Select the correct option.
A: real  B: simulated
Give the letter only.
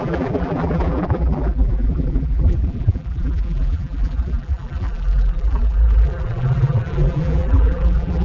B